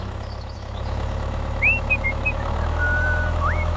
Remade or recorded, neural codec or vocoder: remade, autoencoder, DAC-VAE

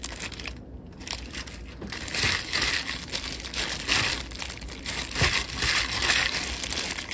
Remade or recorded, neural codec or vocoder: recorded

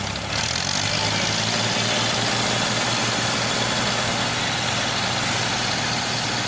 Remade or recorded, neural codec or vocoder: recorded